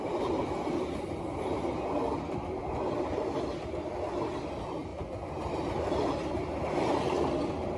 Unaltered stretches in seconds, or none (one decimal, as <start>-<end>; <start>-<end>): 0.0-7.8